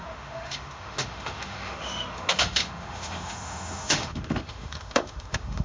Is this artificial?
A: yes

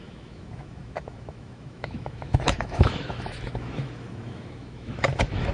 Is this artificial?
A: yes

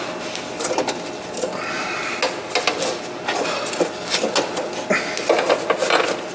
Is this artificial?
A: no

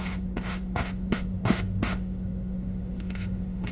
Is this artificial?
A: yes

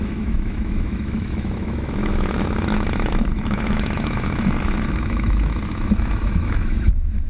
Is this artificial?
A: yes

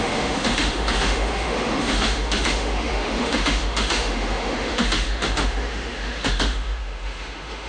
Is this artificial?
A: yes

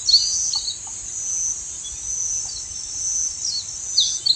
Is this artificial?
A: no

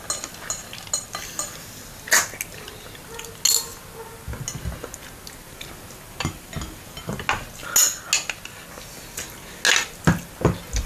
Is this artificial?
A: no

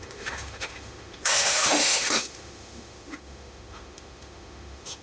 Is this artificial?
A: yes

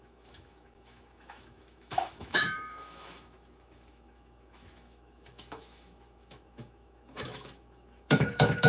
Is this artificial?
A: yes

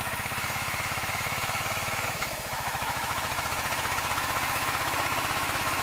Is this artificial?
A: yes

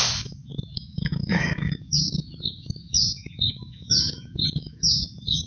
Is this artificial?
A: yes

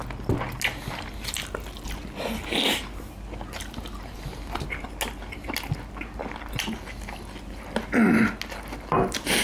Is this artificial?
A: no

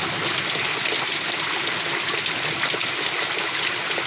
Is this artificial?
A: no